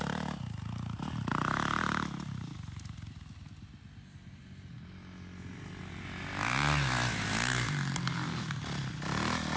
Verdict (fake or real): real